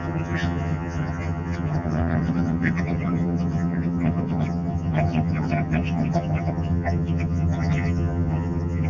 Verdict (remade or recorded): remade